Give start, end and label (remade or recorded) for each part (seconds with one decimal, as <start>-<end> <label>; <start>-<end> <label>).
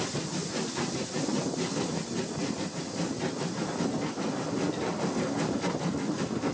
0.0-6.5 recorded